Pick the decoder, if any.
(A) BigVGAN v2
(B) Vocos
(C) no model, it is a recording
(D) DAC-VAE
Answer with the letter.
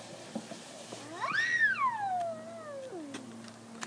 C